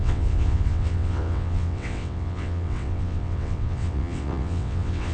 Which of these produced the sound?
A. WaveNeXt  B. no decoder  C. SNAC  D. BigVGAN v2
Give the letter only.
A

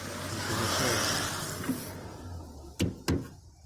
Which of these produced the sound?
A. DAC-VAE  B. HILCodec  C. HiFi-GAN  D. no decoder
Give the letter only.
D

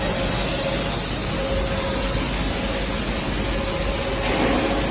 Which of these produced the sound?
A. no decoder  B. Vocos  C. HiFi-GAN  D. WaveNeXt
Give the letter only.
A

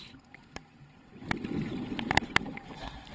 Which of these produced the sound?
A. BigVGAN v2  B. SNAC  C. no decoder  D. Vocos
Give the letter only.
A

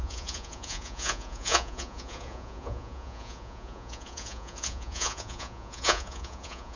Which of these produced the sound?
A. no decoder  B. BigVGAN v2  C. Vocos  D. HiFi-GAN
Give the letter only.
C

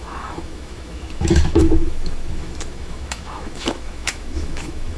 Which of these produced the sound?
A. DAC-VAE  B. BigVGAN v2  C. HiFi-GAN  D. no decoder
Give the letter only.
A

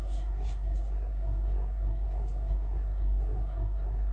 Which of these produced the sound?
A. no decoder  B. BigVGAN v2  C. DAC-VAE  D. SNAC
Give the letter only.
D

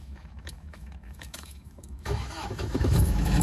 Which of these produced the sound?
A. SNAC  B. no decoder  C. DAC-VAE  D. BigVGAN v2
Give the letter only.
C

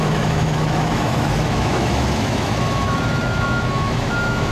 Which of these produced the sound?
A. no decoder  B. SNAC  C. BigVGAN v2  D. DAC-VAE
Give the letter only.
D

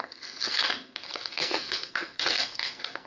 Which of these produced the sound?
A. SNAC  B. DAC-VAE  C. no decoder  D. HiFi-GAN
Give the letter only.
A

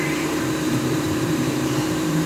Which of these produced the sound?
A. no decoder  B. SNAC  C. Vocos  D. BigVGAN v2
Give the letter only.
D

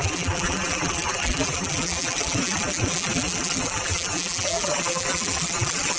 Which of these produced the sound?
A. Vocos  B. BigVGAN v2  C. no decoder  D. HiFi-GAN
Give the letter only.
B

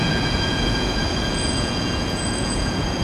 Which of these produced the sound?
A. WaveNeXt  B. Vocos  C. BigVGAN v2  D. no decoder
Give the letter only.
B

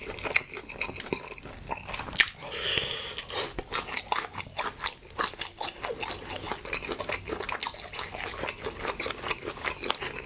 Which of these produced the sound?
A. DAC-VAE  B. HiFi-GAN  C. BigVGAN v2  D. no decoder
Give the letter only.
D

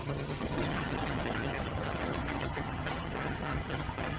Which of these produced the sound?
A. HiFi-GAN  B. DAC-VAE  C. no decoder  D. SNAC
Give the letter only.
A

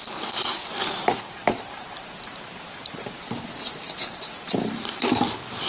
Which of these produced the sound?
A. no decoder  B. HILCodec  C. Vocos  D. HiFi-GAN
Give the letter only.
A